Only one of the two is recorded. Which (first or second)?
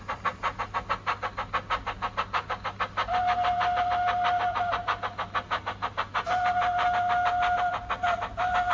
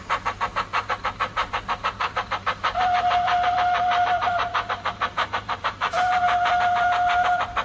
first